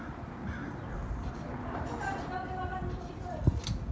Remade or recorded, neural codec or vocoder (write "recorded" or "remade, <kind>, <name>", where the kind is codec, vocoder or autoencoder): recorded